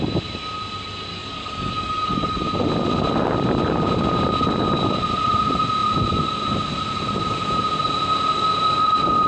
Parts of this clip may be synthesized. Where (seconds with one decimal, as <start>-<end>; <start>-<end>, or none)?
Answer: 1.1-2.4